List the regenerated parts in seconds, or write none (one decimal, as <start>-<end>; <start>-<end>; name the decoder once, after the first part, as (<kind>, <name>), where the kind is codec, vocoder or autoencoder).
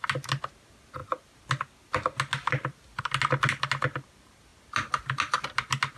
none